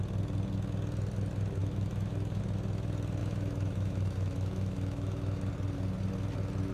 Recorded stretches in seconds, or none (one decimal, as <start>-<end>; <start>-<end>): 0.0-1.6; 2.4-3.2; 5.5-6.7